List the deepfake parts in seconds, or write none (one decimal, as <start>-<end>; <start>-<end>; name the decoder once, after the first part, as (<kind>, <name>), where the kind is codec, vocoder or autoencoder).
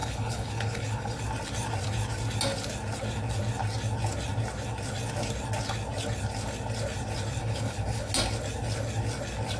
0.0-1.2 (codec, HILCodec); 7.4-8.1